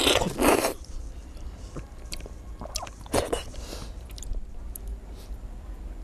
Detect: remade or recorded recorded